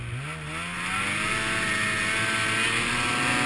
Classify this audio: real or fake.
real